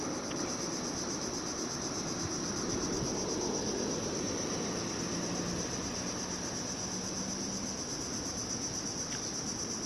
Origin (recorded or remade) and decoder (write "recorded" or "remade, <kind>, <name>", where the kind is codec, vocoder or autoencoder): recorded